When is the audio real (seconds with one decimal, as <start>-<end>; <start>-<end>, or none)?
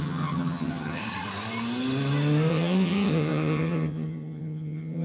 1.0-2.5